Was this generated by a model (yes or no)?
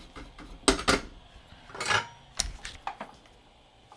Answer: no